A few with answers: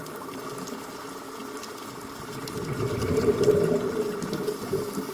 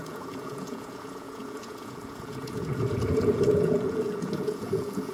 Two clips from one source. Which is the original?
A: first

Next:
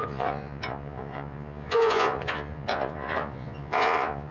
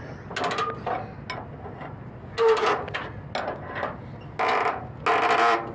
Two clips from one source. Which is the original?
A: second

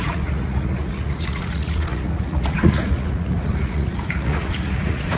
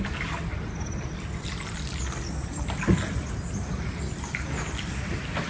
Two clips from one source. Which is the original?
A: second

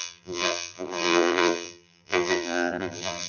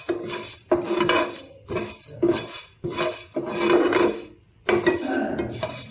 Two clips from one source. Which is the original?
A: second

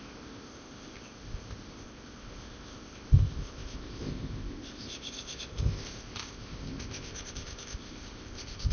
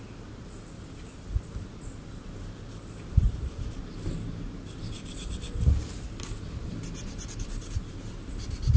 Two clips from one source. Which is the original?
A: second